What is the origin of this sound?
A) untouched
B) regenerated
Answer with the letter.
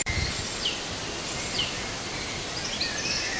A